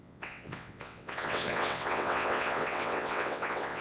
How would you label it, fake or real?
fake